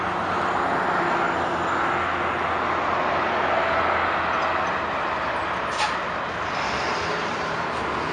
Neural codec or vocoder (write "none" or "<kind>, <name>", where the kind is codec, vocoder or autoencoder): none